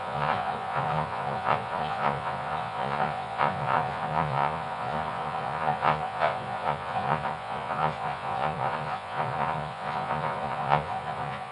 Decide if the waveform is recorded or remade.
remade